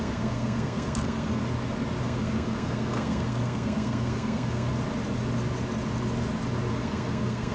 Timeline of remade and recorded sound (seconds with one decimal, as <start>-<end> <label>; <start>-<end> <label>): 0.0-1.4 remade; 1.4-2.0 recorded; 2.0-4.7 remade; 4.7-6.7 recorded; 6.7-7.5 remade